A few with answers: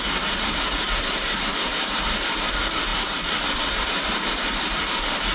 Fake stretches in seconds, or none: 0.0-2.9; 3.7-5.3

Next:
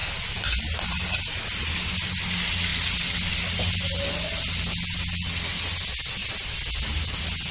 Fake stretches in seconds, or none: 6.2-7.1